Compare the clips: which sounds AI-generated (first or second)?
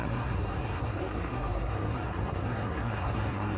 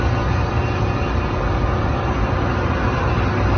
first